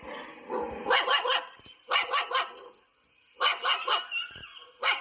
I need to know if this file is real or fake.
real